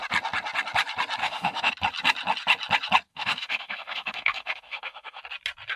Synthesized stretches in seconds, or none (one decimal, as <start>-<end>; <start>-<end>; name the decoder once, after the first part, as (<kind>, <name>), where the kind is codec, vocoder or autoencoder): 1.2-1.7 (autoencoder, DAC-VAE); 3.1-5.2